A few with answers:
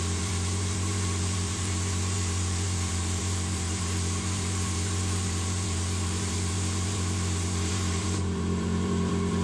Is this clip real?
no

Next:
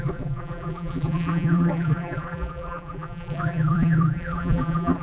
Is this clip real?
no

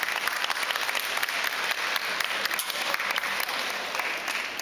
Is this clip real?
yes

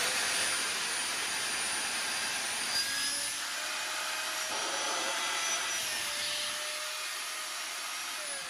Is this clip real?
yes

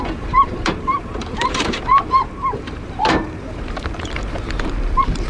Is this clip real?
no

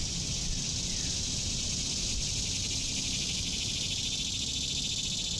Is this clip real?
yes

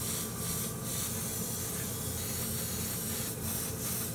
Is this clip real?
yes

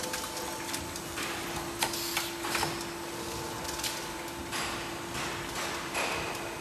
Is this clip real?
yes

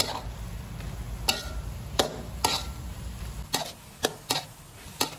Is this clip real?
yes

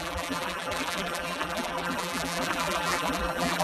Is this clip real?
no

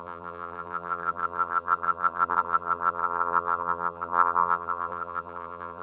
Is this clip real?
no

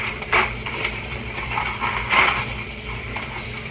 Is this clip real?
no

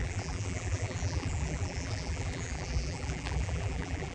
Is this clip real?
no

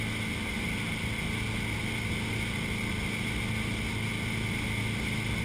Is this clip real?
yes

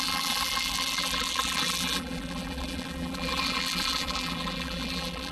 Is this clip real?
no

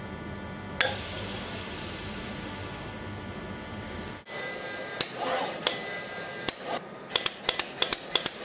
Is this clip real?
yes